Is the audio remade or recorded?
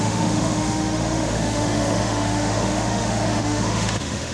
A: remade